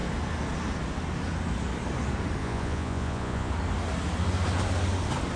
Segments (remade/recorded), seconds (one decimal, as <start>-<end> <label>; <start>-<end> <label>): 0.0-2.4 recorded; 2.4-3.5 remade; 3.5-5.4 recorded